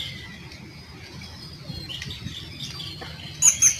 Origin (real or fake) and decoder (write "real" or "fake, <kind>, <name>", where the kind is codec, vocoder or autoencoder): real